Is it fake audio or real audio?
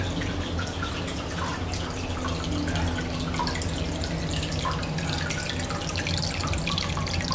real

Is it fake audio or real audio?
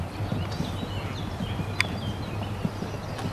real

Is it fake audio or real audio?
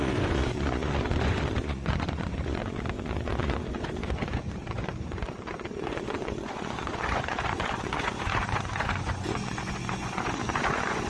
fake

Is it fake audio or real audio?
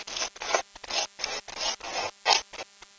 real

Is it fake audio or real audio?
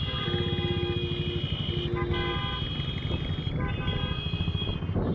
real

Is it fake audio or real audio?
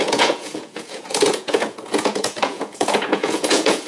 fake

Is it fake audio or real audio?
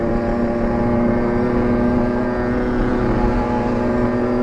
real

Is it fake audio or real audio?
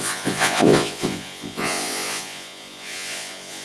fake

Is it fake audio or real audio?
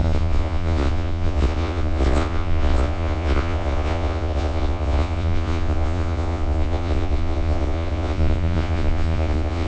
fake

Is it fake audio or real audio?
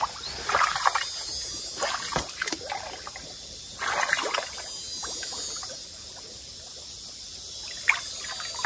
real